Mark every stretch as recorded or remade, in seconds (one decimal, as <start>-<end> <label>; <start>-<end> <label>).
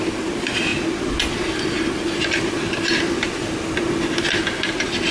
0.0-5.1 recorded